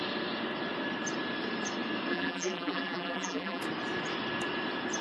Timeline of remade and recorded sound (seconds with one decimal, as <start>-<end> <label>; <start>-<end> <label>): 0.0-2.1 recorded; 2.1-3.6 remade; 3.6-5.0 recorded